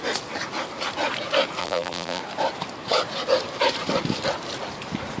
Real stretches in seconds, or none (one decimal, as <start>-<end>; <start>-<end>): 0.0-1.6; 2.2-5.2